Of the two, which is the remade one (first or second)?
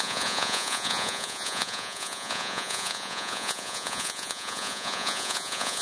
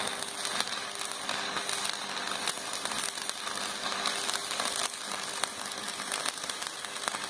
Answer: first